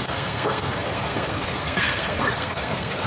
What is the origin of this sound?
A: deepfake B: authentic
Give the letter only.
A